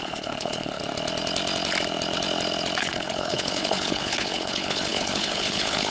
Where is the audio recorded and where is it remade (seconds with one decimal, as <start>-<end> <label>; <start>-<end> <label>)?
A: 0.0-0.8 remade; 0.8-2.8 recorded; 2.8-5.9 remade